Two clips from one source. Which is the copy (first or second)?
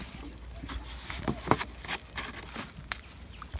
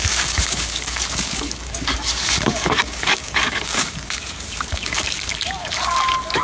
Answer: second